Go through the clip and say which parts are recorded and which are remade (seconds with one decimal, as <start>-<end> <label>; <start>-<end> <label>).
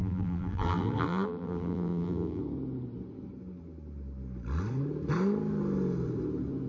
0.0-2.4 remade; 2.4-6.7 recorded